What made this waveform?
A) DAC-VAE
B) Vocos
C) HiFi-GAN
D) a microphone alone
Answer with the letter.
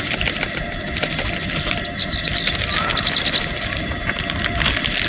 D